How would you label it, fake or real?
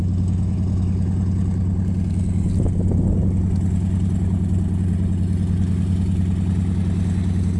real